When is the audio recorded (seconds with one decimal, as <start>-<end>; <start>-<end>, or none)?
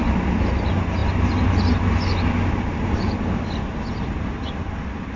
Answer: 0.0-5.2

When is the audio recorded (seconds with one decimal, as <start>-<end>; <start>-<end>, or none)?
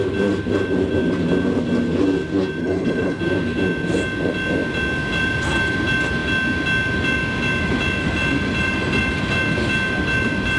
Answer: 0.0-2.6; 3.2-10.6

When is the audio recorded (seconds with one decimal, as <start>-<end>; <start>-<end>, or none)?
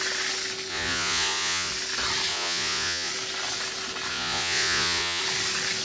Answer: 0.0-0.7; 1.7-2.3; 3.1-4.1; 5.2-5.8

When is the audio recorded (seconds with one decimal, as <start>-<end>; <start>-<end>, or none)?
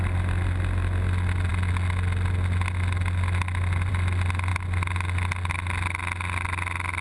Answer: 0.0-7.0